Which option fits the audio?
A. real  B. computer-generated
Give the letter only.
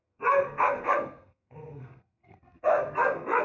B